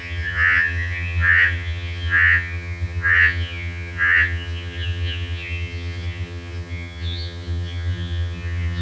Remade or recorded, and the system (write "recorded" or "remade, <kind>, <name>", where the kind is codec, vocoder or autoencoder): remade, vocoder, HiFi-GAN